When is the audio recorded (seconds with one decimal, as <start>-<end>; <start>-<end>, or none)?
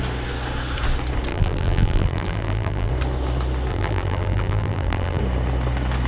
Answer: 0.0-1.3; 2.9-3.7; 5.2-6.1